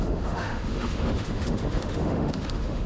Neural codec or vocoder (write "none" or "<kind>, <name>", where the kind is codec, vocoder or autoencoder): autoencoder, DAC-VAE